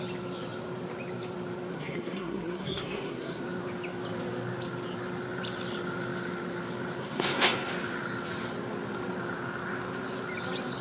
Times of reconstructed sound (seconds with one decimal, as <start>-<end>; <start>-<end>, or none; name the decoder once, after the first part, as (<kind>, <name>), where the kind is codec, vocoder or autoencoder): 1.7-3.4 (codec, SNAC); 7.0-7.7